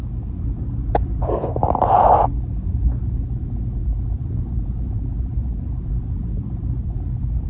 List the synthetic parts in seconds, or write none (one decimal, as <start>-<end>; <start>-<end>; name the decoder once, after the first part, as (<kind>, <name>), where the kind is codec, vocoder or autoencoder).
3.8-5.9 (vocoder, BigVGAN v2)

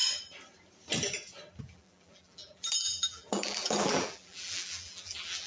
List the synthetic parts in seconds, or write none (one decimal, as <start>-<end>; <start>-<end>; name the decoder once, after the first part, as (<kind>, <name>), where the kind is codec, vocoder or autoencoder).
1.6-5.5 (vocoder, BigVGAN v2)

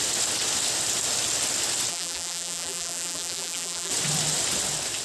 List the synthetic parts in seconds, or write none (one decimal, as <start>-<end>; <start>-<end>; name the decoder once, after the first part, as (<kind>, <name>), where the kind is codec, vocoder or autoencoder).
1.9-3.9 (vocoder, BigVGAN v2)

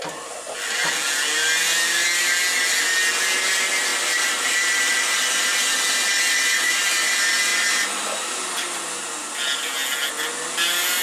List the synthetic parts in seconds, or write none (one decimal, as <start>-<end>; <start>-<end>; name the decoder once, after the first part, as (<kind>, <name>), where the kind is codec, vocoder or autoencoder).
3.9-5.5 (vocoder, BigVGAN v2)

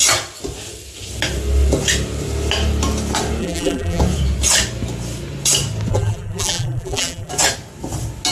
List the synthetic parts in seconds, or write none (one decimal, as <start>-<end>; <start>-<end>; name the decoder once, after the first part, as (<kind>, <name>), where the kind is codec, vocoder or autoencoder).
3.4-4.0 (vocoder, BigVGAN v2); 5.9-7.3